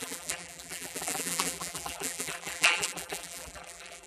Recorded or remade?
remade